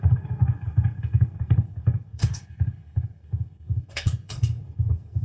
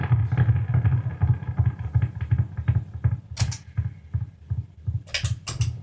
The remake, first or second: first